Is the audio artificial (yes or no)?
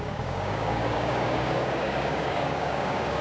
yes